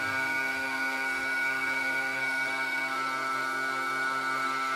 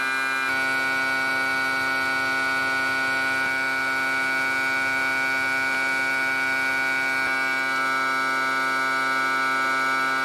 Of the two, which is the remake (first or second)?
first